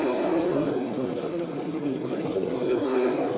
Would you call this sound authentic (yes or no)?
no